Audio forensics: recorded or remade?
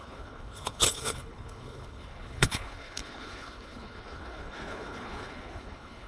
remade